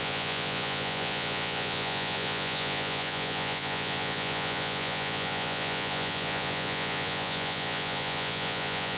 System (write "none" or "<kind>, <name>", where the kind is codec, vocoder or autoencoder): vocoder, Vocos